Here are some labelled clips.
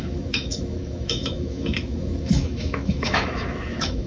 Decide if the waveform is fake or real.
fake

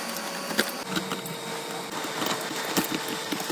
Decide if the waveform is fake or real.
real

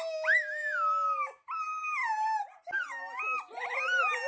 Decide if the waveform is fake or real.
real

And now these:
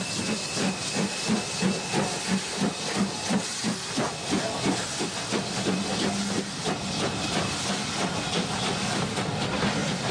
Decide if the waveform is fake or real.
real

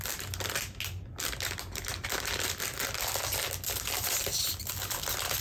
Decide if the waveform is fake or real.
real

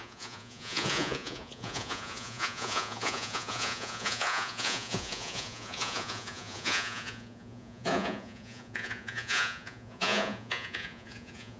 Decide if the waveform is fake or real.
fake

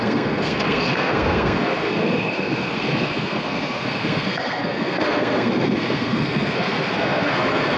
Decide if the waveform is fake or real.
fake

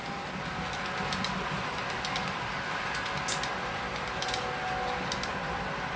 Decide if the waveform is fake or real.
real